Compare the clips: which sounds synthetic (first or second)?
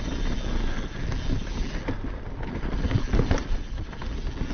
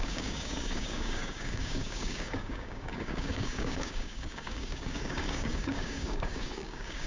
second